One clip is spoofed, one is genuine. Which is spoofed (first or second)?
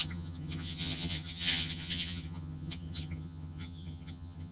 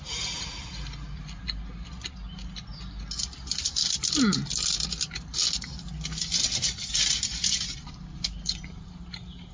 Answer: first